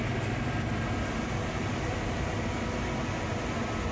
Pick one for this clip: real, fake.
real